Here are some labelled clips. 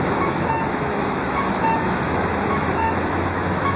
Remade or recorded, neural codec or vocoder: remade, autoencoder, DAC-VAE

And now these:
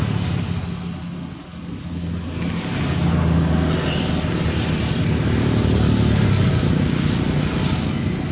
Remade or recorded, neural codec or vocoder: recorded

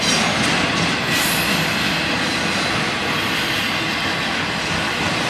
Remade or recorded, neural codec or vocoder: recorded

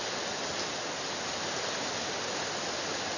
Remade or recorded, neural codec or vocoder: recorded